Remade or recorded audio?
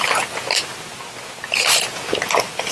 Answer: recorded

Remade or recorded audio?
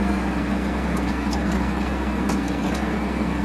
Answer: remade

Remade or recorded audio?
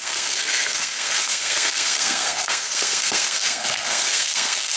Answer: remade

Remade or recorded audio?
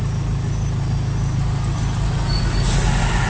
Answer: recorded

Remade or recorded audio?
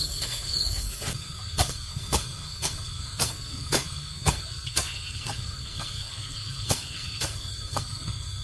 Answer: remade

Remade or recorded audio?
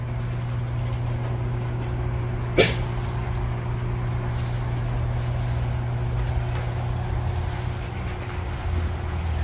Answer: recorded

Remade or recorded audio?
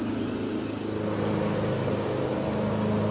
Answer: recorded